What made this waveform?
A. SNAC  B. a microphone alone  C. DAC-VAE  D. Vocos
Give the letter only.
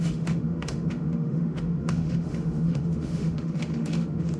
C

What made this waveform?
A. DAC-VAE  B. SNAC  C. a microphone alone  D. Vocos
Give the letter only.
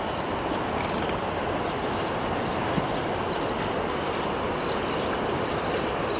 C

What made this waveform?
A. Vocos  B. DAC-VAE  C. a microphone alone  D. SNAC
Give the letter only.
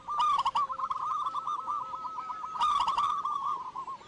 C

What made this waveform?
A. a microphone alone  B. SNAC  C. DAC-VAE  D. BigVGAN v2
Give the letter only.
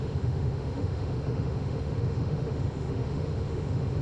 C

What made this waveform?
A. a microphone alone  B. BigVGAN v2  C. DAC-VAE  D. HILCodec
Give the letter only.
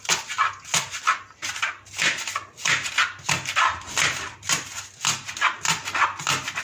A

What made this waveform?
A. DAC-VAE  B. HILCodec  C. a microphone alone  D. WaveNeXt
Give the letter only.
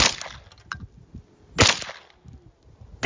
C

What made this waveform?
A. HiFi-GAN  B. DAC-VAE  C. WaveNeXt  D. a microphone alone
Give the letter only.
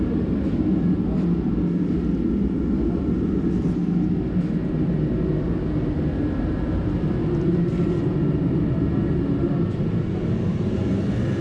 D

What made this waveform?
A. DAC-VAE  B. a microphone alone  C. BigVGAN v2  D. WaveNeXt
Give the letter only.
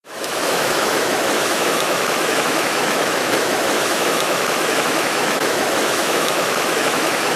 A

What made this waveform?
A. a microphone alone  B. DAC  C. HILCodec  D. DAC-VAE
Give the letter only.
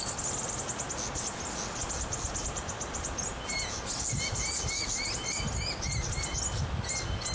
A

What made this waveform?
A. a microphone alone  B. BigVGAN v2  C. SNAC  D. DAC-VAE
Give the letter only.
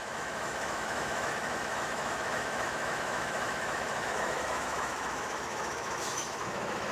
D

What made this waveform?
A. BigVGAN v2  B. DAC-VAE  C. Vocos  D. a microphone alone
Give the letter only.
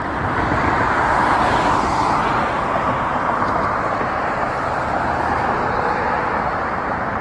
D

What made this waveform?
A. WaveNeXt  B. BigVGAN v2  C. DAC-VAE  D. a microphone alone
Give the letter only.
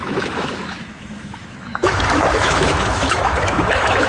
C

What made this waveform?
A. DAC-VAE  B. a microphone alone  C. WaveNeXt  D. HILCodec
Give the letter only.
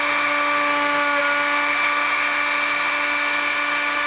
B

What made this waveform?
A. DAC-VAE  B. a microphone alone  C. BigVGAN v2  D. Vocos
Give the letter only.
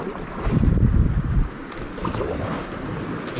B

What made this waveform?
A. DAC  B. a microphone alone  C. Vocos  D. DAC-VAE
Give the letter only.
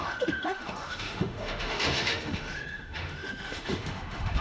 D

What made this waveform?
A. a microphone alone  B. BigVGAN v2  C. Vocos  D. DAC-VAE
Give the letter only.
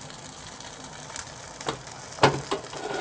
A